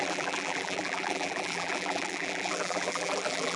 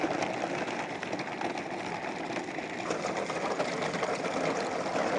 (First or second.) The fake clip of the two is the first